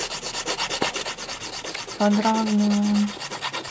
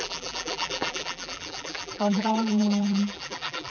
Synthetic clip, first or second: second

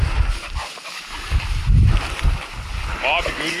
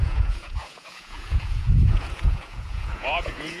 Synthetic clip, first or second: second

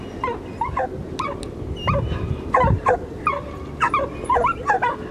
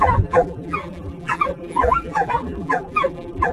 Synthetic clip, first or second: second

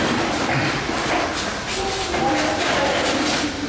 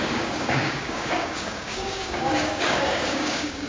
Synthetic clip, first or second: second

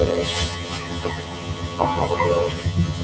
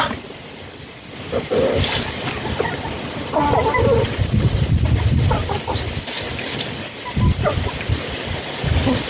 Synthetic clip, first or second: first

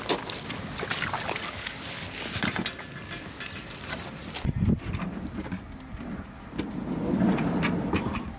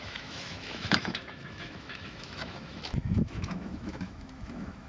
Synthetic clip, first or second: second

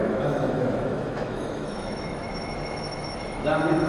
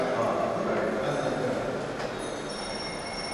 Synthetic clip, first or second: first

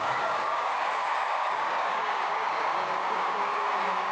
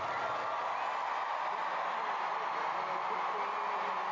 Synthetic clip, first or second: first